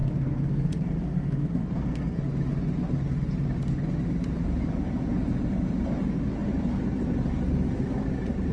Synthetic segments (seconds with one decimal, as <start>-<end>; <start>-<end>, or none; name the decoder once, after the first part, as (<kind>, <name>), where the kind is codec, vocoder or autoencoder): 0.0-2.2 (codec, SNAC)